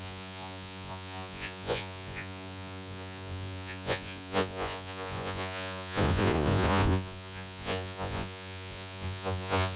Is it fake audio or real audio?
fake